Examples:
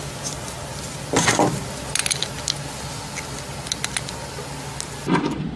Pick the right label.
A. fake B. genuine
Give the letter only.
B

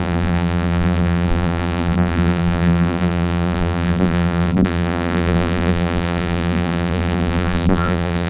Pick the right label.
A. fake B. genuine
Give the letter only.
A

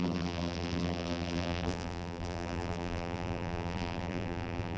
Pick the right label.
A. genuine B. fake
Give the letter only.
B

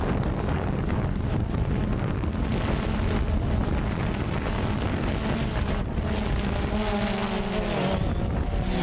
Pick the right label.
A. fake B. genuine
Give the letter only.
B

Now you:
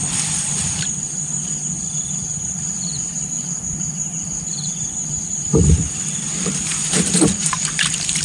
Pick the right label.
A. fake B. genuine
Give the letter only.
A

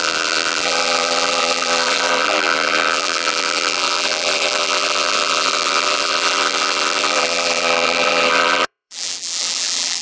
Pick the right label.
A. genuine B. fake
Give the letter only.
B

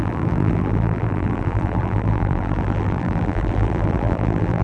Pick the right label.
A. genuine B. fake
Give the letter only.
B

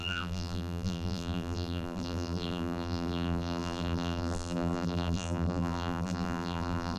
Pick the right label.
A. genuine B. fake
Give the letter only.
B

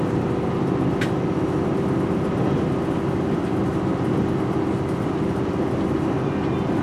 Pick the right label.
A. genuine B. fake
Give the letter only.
A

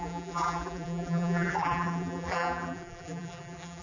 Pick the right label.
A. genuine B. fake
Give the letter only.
B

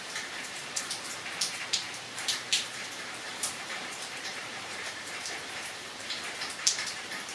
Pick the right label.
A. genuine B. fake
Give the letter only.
B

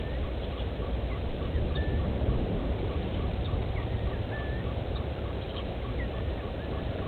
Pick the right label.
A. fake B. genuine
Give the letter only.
A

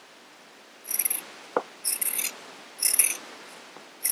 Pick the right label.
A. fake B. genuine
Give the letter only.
B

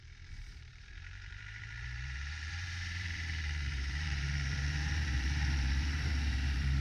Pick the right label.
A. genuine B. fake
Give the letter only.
B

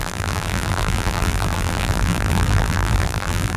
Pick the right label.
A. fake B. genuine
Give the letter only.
A